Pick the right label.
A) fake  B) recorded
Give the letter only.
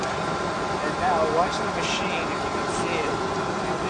B